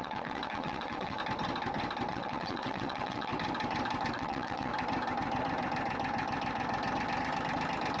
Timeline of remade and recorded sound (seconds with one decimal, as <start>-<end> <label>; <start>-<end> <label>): 0.0-1.2 remade; 1.2-2.1 recorded; 2.1-3.3 remade; 3.3-4.1 recorded; 4.1-4.7 remade; 4.7-8.0 recorded